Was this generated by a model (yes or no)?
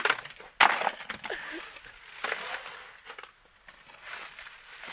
no